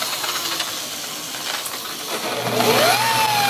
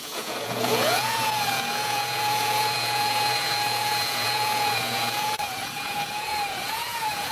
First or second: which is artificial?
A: second